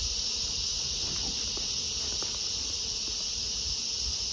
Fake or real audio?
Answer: real